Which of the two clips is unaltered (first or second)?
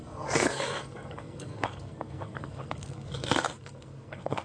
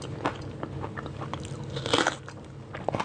second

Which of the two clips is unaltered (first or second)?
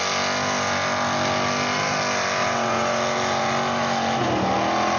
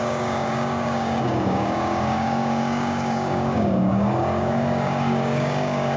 first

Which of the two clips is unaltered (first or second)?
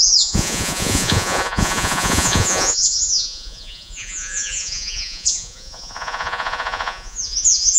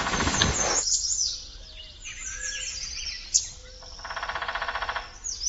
second